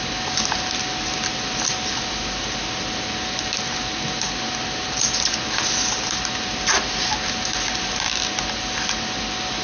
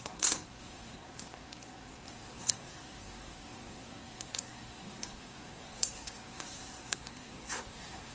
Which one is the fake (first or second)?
second